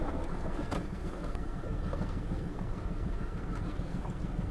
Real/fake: fake